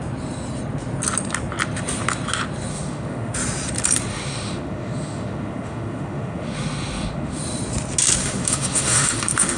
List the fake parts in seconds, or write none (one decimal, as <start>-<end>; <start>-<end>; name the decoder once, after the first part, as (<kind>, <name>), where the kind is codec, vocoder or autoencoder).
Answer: 2.7-3.3 (autoencoder, DAC-VAE); 4.1-7.4; 8.2-9.6